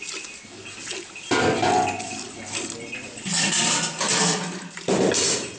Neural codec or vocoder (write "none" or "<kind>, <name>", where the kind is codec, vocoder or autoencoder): none